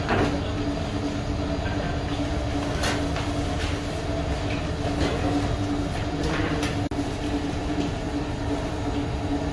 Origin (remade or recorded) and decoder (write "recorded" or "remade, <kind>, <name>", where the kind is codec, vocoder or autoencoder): recorded